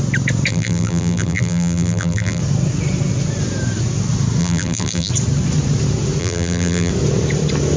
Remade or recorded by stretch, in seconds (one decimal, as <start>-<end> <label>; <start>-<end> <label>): 0.0-0.5 recorded; 0.5-2.4 remade; 2.4-4.4 recorded; 4.4-5.1 remade; 5.1-6.2 recorded; 6.2-6.9 remade; 6.9-7.8 recorded